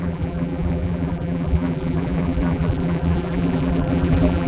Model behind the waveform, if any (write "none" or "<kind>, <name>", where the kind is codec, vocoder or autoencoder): vocoder, BigVGAN v2